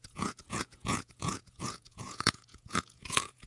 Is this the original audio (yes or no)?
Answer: no